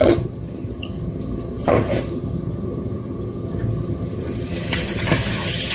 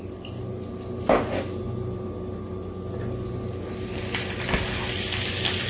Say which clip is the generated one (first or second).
first